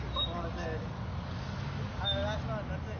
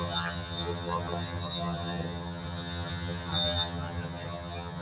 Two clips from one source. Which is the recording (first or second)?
first